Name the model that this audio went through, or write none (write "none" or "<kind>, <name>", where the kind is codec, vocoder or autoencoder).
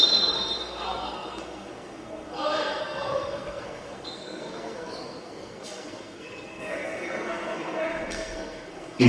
codec, SNAC